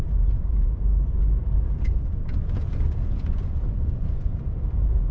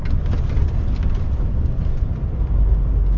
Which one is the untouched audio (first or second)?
second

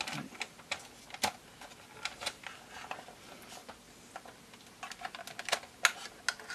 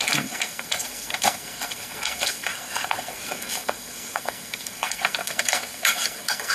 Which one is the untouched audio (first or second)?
first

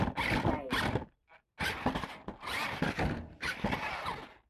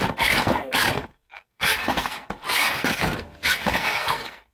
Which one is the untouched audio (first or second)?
first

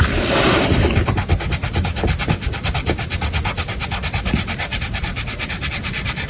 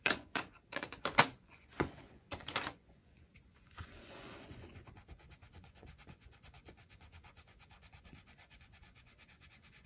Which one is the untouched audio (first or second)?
first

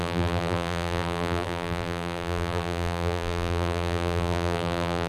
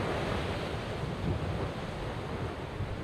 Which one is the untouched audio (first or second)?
second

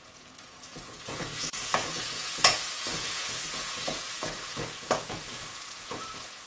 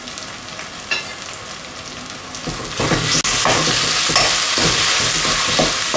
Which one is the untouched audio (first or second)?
second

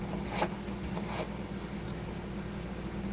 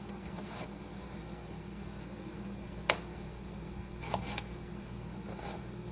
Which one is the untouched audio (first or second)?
first